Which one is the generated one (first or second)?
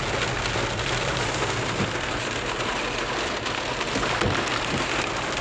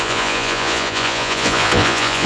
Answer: second